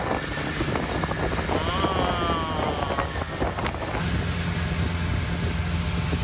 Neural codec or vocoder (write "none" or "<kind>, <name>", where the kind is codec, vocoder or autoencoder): none